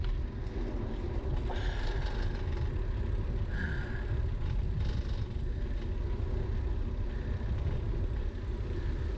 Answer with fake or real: real